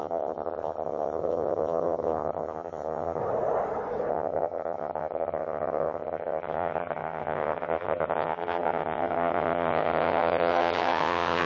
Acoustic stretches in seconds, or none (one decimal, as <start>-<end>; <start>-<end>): 3.2-4.1

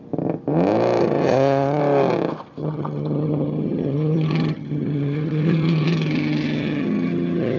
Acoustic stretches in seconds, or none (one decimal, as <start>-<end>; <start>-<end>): 0.0-1.0; 1.8-2.6